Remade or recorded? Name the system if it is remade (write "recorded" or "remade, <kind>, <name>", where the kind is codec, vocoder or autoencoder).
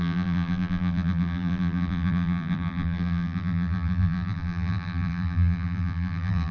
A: remade, vocoder, BigVGAN v2